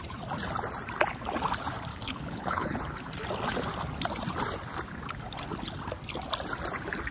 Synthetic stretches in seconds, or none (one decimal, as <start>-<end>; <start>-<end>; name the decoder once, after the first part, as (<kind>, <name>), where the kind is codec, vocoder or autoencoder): 1.9-2.8 (codec, HILCodec)